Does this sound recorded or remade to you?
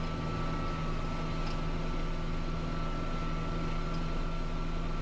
recorded